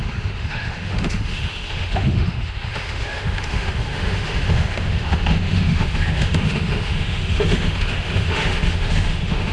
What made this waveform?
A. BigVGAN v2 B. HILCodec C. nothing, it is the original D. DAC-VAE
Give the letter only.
D